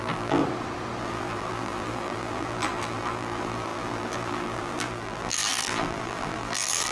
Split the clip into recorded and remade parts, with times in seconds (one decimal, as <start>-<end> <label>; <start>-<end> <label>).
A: 0.0-0.4 remade; 0.4-1.0 recorded; 1.0-6.9 remade